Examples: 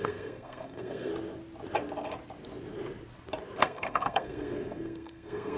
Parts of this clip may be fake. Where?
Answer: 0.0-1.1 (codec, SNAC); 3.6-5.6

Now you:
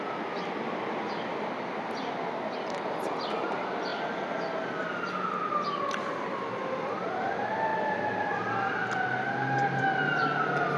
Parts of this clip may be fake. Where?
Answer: none

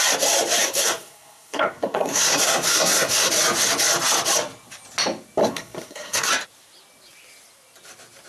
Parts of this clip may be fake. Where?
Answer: 0.6-3.3 (codec, SNAC); 5.4-6.3

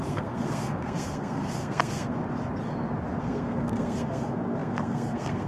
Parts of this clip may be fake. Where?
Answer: 0.0-2.2 (codec, SNAC); 3.2-5.5

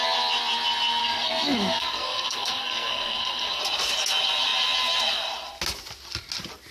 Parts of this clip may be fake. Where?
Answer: 1.0-3.6 (codec, SNAC)

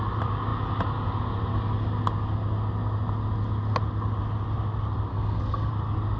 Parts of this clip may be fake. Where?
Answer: 5.1-5.7 (codec, SNAC)

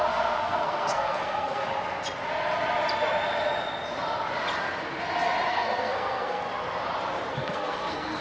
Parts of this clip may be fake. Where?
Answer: 0.0-1.6 (codec, SNAC); 5.5-6.4; 7.3-8.2

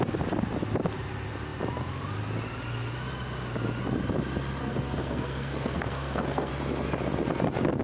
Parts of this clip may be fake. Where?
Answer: 4.6-6.5 (codec, SNAC)